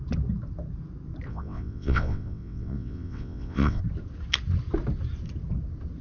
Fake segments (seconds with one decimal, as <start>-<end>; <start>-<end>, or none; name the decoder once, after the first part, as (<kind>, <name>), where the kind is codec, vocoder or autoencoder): 1.3-3.8 (vocoder, WaveNeXt)